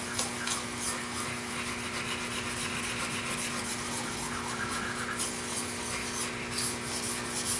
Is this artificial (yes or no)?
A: no